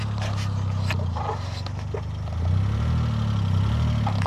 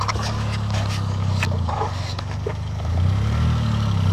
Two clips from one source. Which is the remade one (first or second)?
second